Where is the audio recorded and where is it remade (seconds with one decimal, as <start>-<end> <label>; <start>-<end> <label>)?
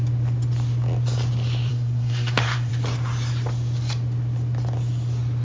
0.0-1.7 recorded; 1.7-2.7 remade; 2.7-5.4 recorded